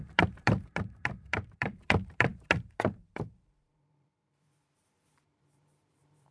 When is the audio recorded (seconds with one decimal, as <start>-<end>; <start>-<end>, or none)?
none